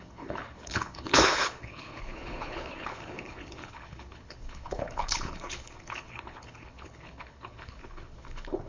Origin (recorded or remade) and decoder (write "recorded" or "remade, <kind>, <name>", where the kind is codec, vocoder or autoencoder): remade, codec, HILCodec